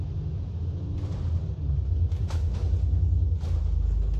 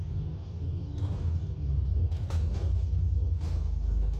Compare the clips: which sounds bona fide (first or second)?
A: first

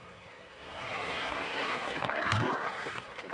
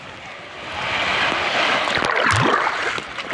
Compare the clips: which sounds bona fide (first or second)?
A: second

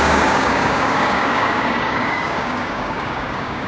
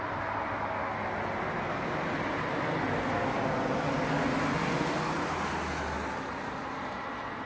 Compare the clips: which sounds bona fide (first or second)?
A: second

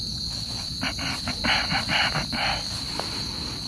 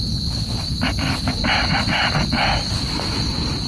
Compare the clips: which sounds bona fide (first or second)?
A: first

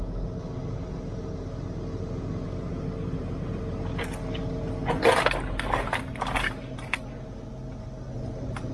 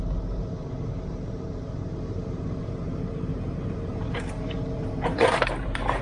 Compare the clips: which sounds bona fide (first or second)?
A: first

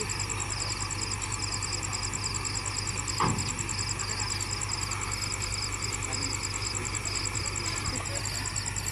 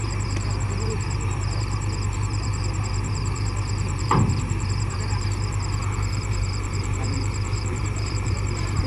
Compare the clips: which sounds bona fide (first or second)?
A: first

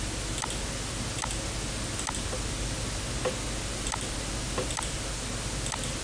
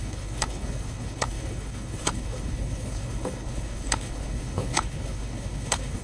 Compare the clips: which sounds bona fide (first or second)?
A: first